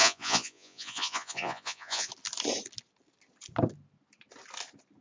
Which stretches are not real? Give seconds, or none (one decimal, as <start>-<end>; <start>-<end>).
0.0-2.1